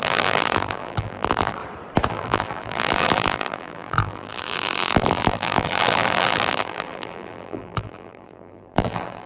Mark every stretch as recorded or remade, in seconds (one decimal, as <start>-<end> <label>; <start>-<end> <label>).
0.0-1.6 remade; 1.6-2.1 recorded; 2.1-9.3 remade

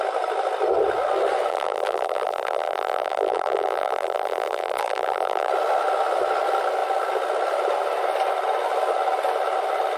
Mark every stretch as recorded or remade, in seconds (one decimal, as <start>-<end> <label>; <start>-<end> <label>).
0.0-1.5 recorded; 1.5-5.5 remade; 5.5-10.0 recorded

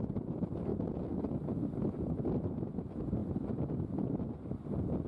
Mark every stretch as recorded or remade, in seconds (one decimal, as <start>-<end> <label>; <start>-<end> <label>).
0.0-5.1 recorded

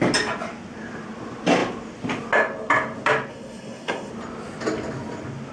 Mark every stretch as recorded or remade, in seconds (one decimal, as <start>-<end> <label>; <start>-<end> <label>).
0.0-3.3 recorded; 3.3-4.1 remade; 4.1-5.5 recorded

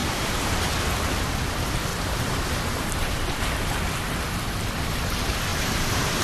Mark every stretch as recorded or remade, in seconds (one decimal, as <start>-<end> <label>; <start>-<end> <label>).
0.0-0.7 remade; 0.7-1.9 recorded; 1.9-3.4 remade; 3.4-5.5 recorded; 5.5-6.2 remade

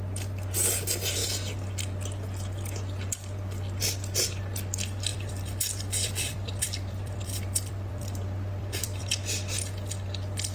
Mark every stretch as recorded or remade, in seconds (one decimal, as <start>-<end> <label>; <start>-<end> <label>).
0.0-5.1 recorded; 5.1-9.1 remade; 9.1-10.5 recorded

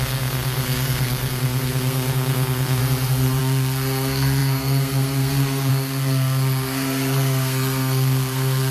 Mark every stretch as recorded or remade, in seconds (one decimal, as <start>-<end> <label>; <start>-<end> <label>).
0.0-2.8 remade; 2.8-3.4 recorded; 3.4-8.7 remade

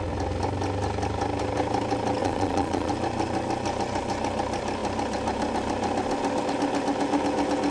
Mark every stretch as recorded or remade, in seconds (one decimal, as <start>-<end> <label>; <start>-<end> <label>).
0.0-2.2 recorded; 2.2-2.9 remade; 2.9-7.7 recorded